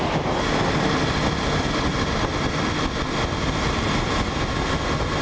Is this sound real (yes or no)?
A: yes